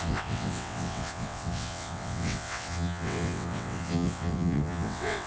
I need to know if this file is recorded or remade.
remade